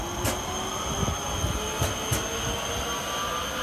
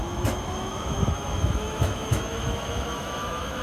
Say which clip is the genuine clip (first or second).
first